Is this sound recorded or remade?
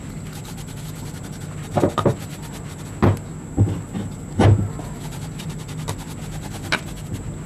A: recorded